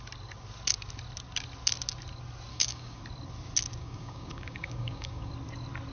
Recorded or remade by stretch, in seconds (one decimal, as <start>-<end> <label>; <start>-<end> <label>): 0.0-2.5 recorded; 2.5-3.0 remade; 3.0-3.8 recorded; 3.8-5.3 remade; 5.3-5.9 recorded